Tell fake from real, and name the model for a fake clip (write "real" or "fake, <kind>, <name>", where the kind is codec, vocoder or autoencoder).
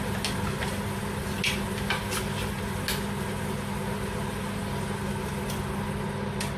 real